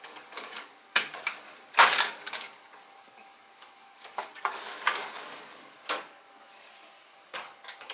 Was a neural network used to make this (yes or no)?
yes